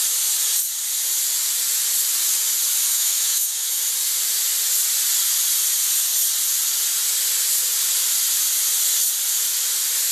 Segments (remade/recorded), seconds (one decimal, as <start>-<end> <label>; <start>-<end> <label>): 0.0-2.9 recorded; 2.9-3.8 remade; 3.8-10.1 recorded